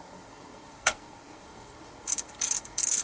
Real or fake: fake